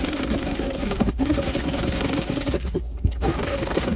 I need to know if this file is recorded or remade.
remade